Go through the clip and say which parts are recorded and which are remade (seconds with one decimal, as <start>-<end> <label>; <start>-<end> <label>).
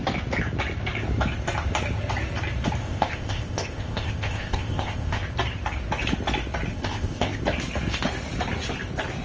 0.0-2.8 recorded; 2.8-5.2 remade; 5.2-6.7 recorded; 6.7-7.4 remade; 7.4-9.2 recorded